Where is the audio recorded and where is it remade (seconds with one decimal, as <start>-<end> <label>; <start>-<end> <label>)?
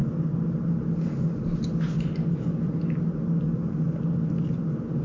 0.0-5.0 recorded